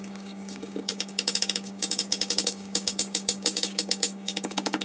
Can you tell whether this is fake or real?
fake